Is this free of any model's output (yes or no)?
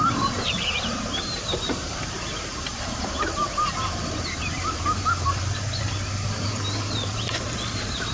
no